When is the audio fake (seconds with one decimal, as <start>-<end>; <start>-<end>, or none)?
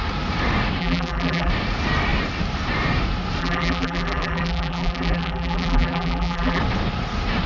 0.8-1.5; 3.4-6.6